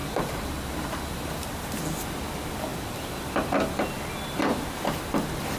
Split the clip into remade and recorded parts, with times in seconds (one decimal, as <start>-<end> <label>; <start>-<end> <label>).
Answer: 0.0-1.5 remade; 1.5-5.6 recorded